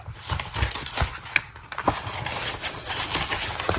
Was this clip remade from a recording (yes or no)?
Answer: no